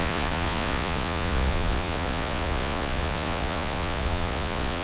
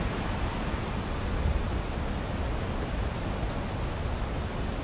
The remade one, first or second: first